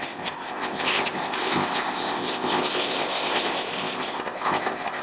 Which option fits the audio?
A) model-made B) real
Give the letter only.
A